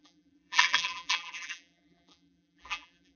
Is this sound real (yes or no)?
no